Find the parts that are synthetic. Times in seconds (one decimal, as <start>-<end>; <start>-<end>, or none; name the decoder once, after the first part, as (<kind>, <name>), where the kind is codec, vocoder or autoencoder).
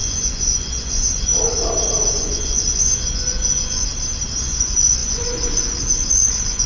0.0-1.3 (vocoder, Vocos); 2.1-3.9; 4.4-6.7